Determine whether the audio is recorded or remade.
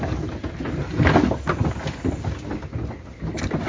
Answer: recorded